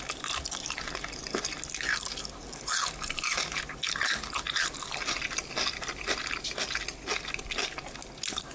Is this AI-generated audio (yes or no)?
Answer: no